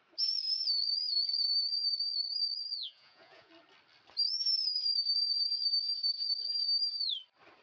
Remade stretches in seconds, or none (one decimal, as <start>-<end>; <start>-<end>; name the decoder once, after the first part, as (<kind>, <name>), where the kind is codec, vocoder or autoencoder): 2.7-3.5 (vocoder, Vocos)